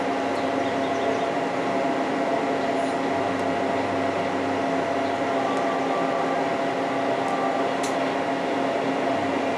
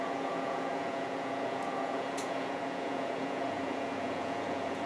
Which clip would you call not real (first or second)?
second